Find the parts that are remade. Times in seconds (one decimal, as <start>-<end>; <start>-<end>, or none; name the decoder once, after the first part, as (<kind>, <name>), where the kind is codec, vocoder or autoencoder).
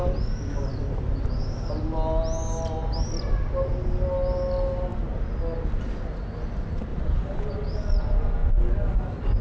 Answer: 6.9-7.5 (vocoder, BigVGAN v2)